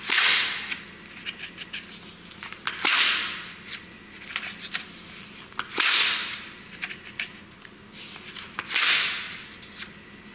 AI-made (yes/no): no